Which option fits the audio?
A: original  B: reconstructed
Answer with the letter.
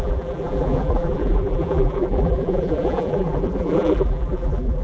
B